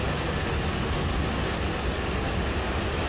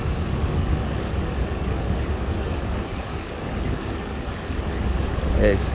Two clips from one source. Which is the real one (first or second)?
first